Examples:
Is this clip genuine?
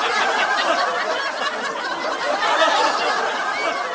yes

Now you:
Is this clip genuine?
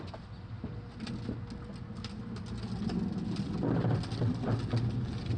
yes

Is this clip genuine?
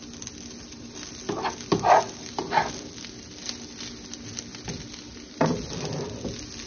yes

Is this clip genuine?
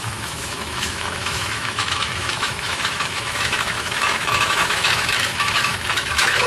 no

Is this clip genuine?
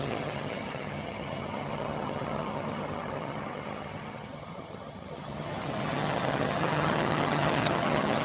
no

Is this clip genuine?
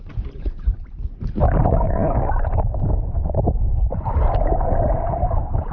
no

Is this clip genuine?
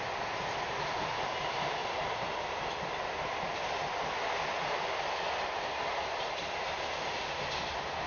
yes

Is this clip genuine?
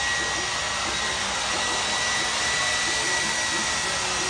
yes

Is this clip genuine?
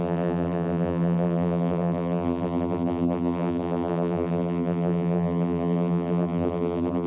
no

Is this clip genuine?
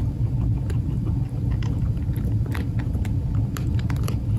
yes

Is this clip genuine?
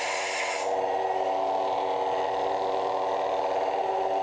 yes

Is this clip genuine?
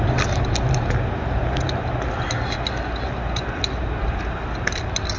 yes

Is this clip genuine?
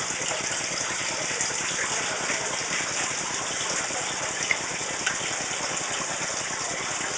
yes